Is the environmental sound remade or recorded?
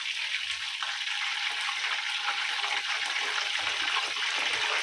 recorded